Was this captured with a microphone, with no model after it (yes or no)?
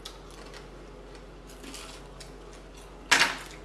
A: yes